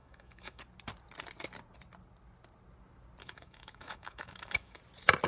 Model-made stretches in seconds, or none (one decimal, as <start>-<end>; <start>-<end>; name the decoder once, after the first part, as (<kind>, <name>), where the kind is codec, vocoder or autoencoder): 0.0-0.6 (autoencoder, DAC-VAE); 3.2-4.8